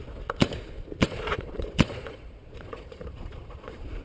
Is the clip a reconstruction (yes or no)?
yes